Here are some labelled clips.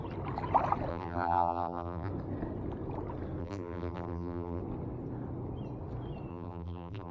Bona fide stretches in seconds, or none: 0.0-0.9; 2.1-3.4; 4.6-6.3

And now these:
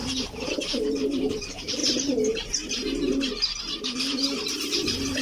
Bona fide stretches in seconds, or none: 0.5-5.2